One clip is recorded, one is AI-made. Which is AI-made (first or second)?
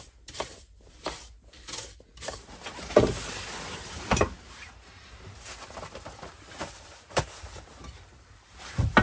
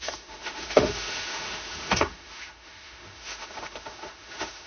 second